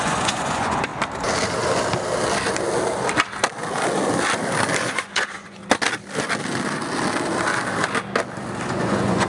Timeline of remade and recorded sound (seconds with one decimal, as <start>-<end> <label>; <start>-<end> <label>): 0.0-0.9 remade; 0.9-4.9 recorded; 4.9-5.6 remade; 5.6-8.7 recorded; 8.7-9.3 remade